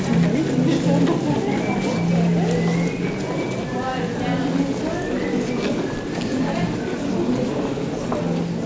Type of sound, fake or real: real